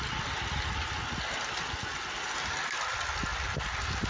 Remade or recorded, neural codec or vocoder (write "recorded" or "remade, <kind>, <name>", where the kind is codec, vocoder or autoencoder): recorded